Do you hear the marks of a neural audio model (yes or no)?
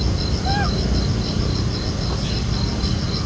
no